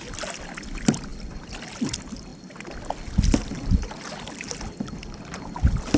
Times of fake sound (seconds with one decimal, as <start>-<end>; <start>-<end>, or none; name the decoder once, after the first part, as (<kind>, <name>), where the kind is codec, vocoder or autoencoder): none